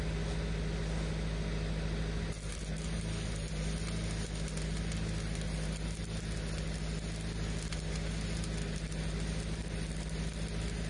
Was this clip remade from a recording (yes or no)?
no